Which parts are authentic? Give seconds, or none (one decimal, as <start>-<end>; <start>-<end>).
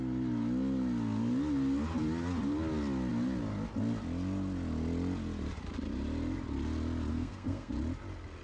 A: 0.0-7.1; 7.7-8.4